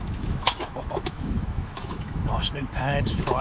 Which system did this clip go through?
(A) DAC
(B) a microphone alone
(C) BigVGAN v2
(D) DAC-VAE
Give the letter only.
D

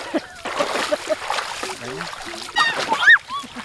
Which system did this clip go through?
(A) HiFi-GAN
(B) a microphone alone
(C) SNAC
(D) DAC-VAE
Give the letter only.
B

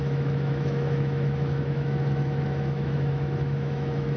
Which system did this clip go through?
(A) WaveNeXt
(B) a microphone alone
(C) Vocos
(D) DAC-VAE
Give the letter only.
D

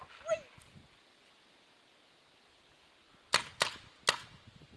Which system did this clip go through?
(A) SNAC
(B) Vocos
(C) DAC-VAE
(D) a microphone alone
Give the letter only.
D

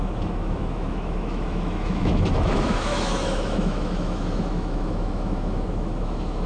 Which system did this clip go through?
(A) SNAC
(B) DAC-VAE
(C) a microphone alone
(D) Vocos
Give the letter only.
B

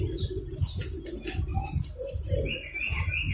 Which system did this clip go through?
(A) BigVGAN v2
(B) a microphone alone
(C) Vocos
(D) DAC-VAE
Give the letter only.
B